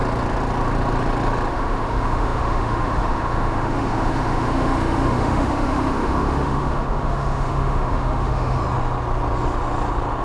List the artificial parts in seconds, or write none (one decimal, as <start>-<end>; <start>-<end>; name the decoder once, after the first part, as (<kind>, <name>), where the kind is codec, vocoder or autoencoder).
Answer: 1.5-8.6 (autoencoder, DAC-VAE)